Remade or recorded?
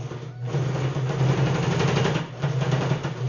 recorded